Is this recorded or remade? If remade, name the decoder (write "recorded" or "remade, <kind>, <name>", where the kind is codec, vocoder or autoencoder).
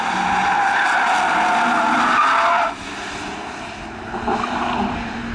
recorded